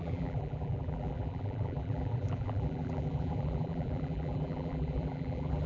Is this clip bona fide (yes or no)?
no